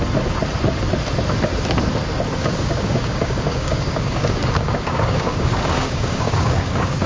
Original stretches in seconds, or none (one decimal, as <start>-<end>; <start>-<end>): 0.0-2.4